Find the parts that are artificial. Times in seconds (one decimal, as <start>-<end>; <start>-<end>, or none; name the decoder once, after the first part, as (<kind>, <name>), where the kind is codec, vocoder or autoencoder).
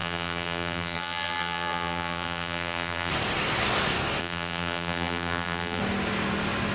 0.0-3.1 (vocoder, BigVGAN v2); 4.2-5.8